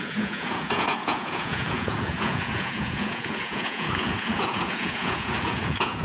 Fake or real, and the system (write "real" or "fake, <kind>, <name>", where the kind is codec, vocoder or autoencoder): fake, vocoder, Vocos